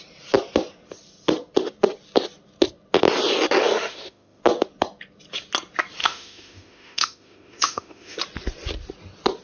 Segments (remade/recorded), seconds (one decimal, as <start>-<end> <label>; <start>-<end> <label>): 0.0-3.6 recorded; 3.6-4.4 remade; 4.4-6.0 recorded; 6.0-8.2 remade; 8.2-9.4 recorded